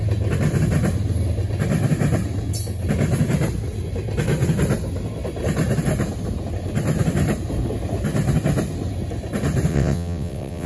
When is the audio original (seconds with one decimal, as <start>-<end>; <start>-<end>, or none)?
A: 0.0-9.7